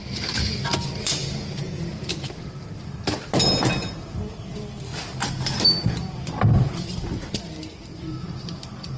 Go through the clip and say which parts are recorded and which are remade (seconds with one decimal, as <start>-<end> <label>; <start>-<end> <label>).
0.0-9.0 recorded